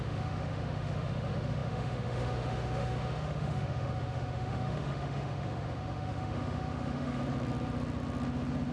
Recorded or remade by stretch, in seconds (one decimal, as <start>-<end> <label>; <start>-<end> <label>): 0.0-7.2 remade; 7.2-8.7 recorded

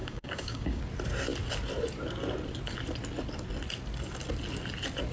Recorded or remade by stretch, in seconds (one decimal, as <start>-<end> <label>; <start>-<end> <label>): 0.0-0.8 remade; 0.8-5.1 recorded

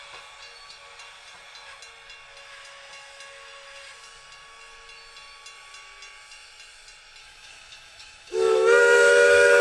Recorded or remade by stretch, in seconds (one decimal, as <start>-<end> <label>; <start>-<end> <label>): 0.0-7.2 recorded; 7.2-9.6 remade

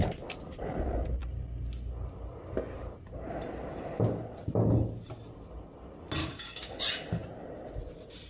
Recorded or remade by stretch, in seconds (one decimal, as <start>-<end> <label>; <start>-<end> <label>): 0.0-6.2 recorded; 6.2-6.7 remade; 6.7-8.3 recorded